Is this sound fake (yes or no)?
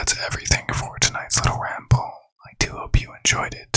no